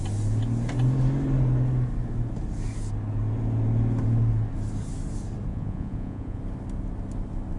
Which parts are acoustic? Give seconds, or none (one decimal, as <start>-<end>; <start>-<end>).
0.0-5.5; 6.4-7.6